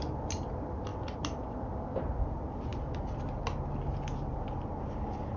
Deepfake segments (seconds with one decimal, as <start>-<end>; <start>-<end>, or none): none

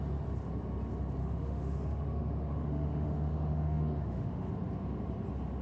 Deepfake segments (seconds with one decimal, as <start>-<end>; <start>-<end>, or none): 1.2-4.5

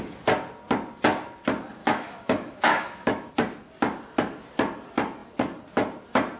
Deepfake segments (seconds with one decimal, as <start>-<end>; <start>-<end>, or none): 1.8-3.3

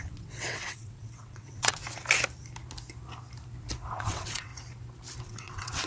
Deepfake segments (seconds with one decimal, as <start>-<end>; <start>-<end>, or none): 0.0-1.8; 3.9-4.5; 5.2-5.9

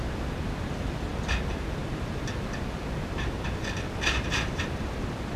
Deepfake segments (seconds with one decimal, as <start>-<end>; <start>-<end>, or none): none

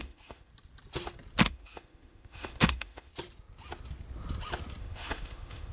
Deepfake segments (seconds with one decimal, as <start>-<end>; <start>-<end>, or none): 0.0-0.5; 1.5-3.1; 4.8-5.7

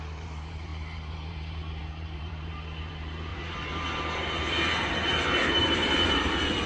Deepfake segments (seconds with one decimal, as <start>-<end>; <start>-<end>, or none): 0.0-6.7

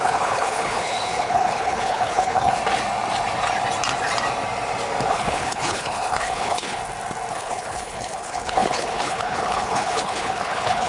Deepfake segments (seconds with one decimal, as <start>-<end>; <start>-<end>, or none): 0.0-2.6; 5.1-6.8; 7.3-10.9